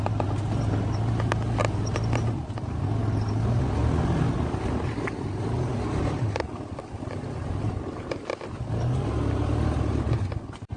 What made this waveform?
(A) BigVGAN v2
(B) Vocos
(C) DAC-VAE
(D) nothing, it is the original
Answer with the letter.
D